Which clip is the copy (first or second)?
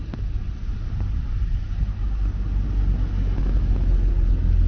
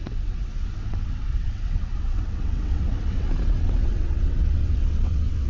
second